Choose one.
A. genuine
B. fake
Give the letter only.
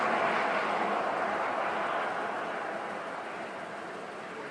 A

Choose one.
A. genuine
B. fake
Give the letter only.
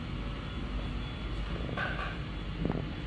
A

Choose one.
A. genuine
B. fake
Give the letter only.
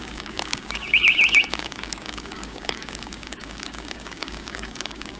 B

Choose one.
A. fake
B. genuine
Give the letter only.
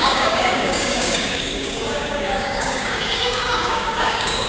A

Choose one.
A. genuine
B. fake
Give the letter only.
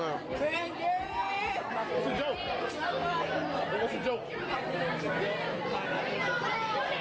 A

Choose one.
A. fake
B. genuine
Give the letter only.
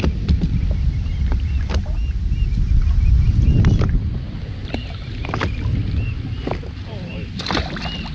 B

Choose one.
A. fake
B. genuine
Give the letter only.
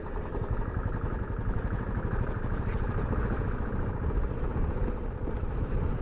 B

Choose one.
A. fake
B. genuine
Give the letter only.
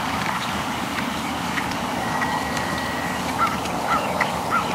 A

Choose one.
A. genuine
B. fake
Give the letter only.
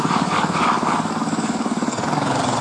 B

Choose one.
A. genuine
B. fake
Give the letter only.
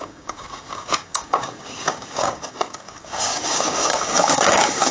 B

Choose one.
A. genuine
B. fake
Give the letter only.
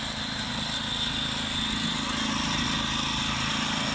A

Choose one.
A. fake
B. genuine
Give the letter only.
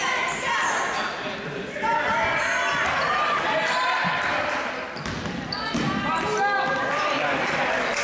B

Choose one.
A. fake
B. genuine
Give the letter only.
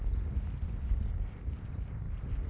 B